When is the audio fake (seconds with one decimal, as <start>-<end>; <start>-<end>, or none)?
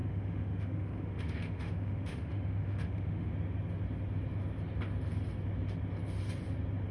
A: 0.0-3.3